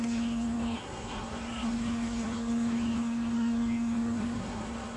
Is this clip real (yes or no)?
no